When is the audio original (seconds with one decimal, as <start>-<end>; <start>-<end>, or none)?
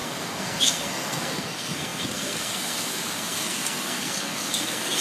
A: none